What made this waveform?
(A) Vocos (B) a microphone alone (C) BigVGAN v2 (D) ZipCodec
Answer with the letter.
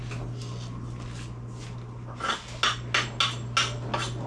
B